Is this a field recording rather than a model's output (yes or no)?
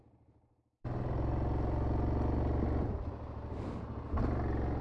yes